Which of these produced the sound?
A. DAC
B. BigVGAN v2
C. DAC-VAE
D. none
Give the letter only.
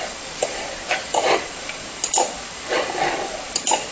D